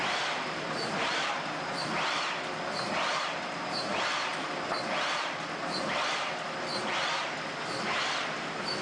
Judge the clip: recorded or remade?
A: remade